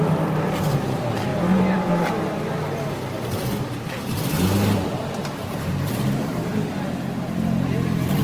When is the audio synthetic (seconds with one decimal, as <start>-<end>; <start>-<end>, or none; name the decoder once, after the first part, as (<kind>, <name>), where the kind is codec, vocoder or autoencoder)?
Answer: 1.3-1.9 (vocoder, BigVGAN v2); 5.0-6.5